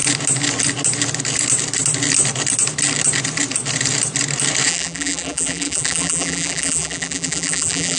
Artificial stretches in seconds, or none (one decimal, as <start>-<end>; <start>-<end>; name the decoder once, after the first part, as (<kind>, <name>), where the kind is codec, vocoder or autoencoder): 4.7-8.0 (vocoder, BigVGAN v2)